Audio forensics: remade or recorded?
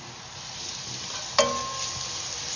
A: recorded